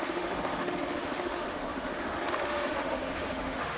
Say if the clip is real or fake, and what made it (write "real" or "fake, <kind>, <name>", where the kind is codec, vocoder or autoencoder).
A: fake, autoencoder, DAC-VAE